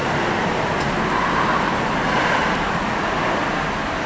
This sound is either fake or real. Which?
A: fake